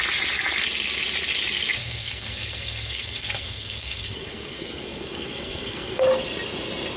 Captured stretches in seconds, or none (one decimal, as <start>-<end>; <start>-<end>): 0.0-1.8; 6.0-7.0